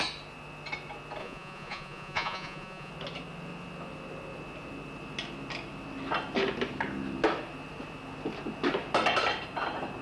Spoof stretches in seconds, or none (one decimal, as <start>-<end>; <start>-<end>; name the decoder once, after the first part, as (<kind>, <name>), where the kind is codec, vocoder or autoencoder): 1.2-2.9 (vocoder, Vocos)